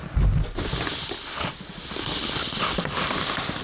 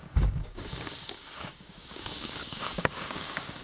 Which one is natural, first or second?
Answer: first